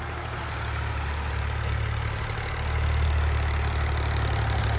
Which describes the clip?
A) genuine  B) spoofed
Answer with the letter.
A